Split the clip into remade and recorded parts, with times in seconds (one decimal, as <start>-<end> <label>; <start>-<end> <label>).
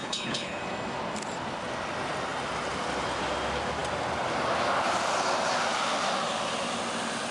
0.0-0.6 remade; 0.6-7.3 recorded